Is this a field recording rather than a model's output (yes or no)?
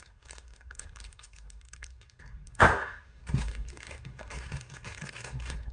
no